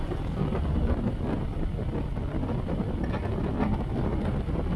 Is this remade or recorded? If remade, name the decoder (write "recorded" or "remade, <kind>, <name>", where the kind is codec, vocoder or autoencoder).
recorded